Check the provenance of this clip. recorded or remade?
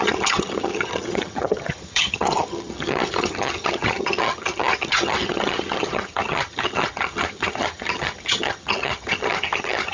remade